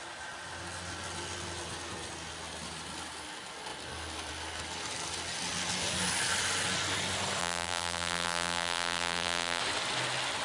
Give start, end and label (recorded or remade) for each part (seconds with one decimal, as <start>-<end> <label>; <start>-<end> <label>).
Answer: 0.0-7.4 recorded; 7.4-9.6 remade; 9.6-10.4 recorded

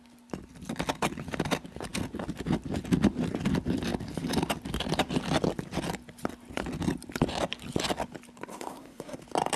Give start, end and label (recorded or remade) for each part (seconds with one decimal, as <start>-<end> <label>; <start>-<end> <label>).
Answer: 0.0-8.5 recorded; 8.5-9.2 remade; 9.2-9.6 recorded

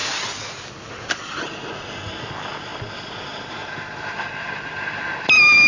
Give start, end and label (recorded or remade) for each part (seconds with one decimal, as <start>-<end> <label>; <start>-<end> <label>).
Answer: 0.0-5.7 recorded